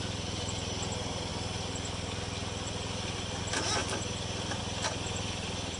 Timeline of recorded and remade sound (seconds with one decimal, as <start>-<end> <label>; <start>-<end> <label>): 0.0-5.8 recorded